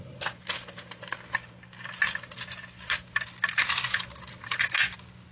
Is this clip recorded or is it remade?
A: recorded